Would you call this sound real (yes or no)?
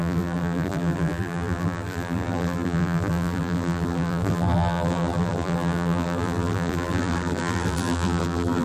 no